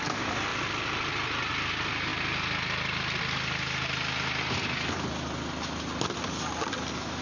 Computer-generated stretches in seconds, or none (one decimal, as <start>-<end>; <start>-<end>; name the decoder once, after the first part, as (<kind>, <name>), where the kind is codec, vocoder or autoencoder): 0.5-1.5 (vocoder, BigVGAN v2)